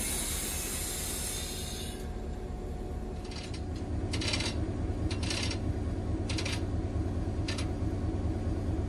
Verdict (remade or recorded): recorded